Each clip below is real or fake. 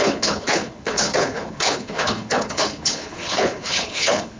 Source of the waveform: fake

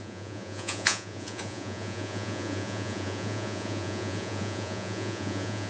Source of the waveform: fake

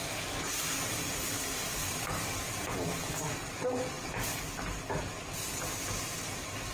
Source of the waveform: fake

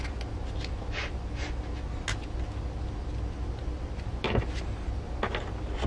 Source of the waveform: real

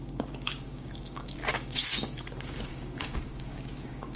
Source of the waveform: fake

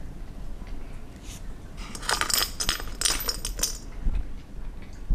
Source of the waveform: real